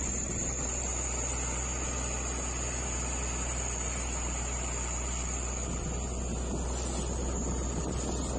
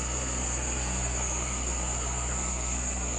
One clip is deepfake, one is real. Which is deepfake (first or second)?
second